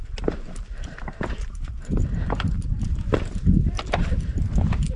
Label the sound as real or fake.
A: fake